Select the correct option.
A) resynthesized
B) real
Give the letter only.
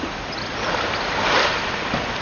B